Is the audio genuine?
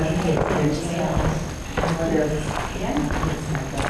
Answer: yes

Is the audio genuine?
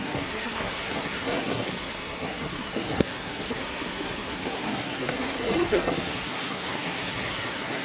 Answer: no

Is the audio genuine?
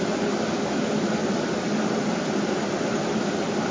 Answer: yes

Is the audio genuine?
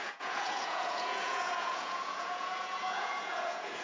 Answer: no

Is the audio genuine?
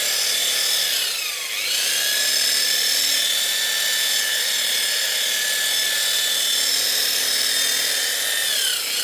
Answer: yes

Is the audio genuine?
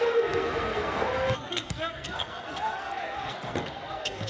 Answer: no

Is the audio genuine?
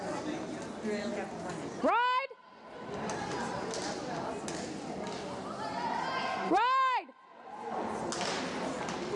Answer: yes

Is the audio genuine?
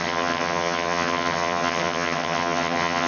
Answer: no